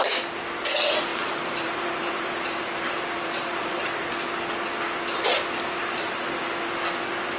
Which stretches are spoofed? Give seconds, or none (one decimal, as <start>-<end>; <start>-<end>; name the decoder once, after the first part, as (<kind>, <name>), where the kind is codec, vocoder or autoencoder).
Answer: 1.1-4.0 (vocoder, BigVGAN v2); 5.8-6.5